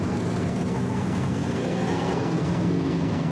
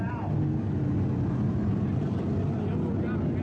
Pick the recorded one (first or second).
second